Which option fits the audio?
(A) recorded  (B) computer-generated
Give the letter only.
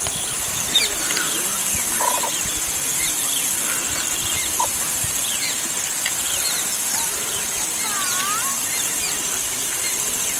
B